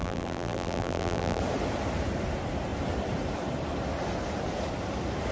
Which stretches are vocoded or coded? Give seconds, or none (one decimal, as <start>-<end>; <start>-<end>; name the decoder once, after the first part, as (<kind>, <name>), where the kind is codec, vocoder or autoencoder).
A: 0.0-1.4 (vocoder, BigVGAN v2)